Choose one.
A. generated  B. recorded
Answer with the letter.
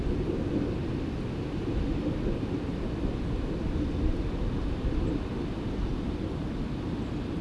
B